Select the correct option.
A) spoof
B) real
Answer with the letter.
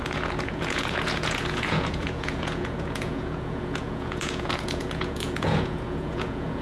A